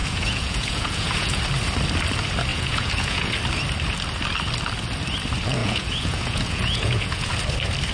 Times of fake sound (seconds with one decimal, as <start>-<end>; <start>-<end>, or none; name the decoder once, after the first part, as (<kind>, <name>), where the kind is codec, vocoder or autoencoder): 0.0-1.4 (vocoder, Vocos); 2.5-3.4; 5.6-7.3